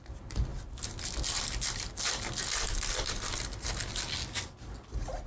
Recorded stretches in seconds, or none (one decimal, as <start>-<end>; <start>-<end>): 0.0-5.3